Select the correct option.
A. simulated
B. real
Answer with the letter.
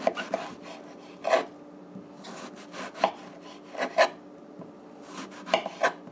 B